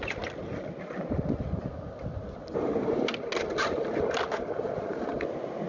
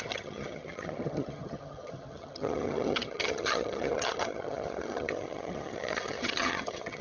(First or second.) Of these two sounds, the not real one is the second